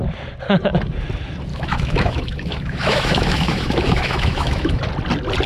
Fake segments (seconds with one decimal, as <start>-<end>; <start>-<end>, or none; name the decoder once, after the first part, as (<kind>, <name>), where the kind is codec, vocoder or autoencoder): 1.5-4.8 (autoencoder, DAC-VAE)